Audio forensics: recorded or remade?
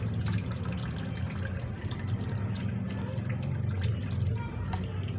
recorded